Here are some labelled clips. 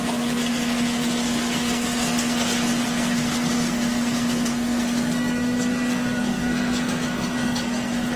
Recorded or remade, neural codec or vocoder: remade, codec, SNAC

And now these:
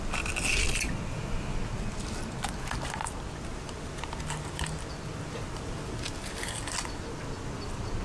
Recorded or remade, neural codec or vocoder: recorded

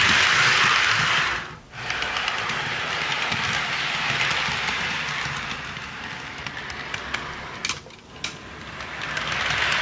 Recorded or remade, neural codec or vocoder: recorded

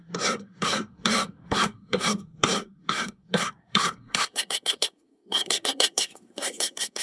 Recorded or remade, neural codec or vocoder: remade, codec, SNAC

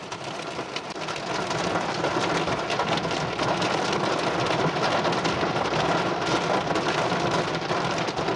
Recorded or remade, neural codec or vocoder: recorded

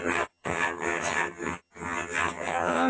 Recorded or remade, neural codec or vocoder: remade, vocoder, HiFi-GAN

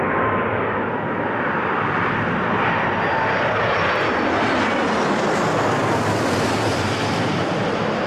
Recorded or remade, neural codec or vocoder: recorded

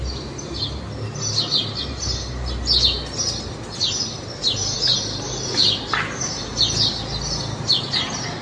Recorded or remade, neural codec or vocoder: recorded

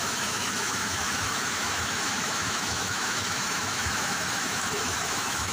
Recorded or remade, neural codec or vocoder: remade, autoencoder, DAC-VAE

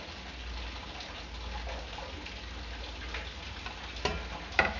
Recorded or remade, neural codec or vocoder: recorded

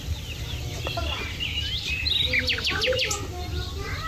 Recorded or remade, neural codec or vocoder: recorded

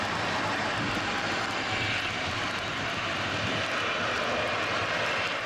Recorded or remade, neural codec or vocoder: recorded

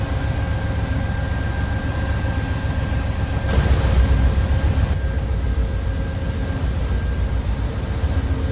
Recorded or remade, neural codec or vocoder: recorded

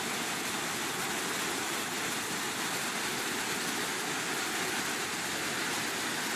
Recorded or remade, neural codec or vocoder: recorded